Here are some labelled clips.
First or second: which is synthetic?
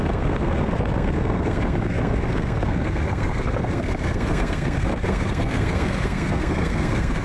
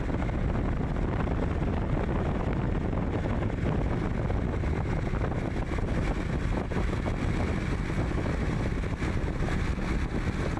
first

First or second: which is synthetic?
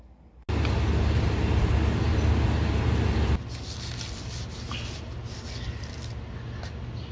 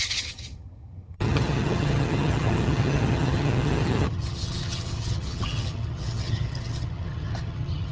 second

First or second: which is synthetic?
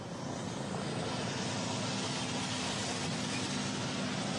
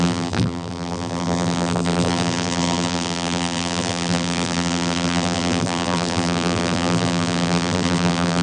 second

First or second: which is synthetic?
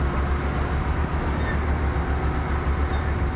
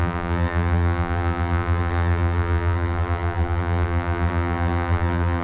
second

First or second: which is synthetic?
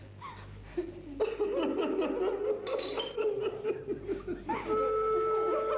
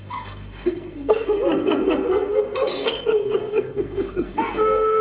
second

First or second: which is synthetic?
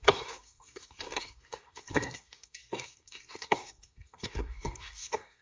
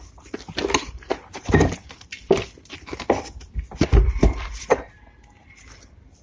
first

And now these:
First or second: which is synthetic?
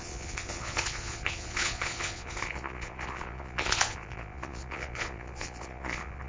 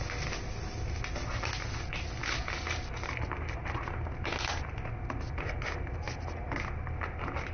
first